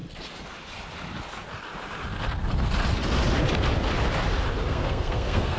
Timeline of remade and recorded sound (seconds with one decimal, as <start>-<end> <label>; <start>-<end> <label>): 0.0-4.7 recorded; 4.7-5.6 remade